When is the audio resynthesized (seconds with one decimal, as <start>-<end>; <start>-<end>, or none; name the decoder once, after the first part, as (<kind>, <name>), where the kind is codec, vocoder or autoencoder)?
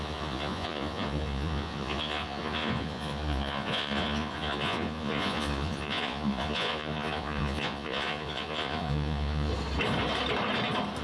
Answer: 0.0-9.5 (vocoder, Vocos)